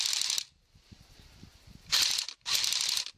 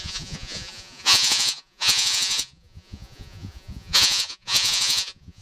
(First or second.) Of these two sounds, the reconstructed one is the second